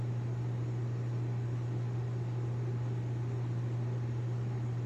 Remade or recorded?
recorded